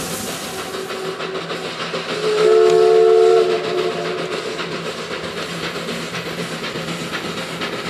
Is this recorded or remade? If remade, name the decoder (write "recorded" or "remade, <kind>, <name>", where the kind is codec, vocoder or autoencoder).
recorded